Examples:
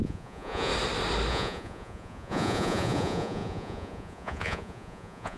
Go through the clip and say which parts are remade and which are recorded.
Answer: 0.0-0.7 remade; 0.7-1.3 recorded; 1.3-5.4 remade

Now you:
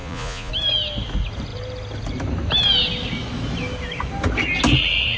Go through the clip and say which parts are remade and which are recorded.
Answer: 0.0-0.5 remade; 0.5-5.2 recorded

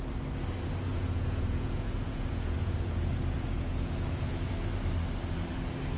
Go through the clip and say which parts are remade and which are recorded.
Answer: 0.0-0.9 recorded; 0.9-4.5 remade; 4.5-6.0 recorded

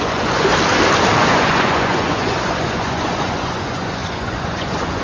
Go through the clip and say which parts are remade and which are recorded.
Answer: 0.0-0.5 remade; 0.5-1.2 recorded; 1.2-5.0 remade

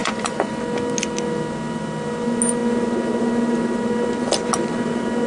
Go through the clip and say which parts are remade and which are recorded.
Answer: 0.0-0.5 remade; 0.5-5.3 recorded